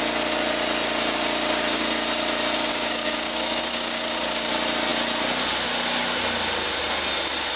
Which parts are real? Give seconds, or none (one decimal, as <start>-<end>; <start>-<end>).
0.0-2.7; 4.5-7.6